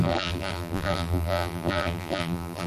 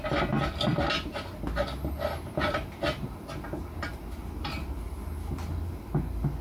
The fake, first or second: first